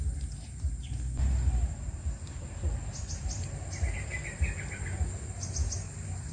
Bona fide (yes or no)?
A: yes